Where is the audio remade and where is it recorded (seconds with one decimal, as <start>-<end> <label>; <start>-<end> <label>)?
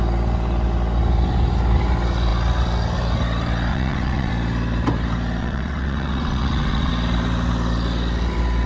0.0-3.7 recorded; 3.7-4.3 remade; 4.3-5.4 recorded; 5.4-6.9 remade; 6.9-8.7 recorded